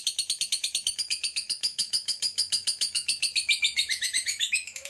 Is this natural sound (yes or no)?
no